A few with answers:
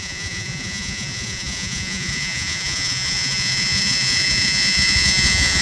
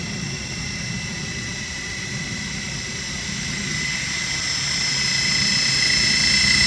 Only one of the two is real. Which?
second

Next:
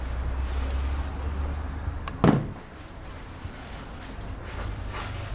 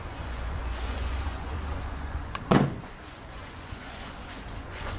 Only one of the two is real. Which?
first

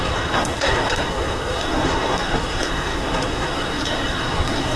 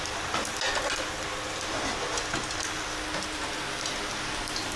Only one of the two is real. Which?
second